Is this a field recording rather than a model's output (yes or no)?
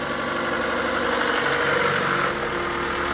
yes